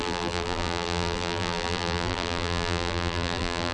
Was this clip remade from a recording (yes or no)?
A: yes